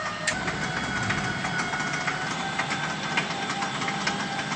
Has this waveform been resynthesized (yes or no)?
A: no